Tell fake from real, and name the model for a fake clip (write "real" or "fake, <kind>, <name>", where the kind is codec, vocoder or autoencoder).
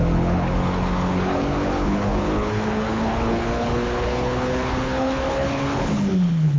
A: fake, codec, HILCodec